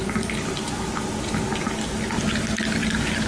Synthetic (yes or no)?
no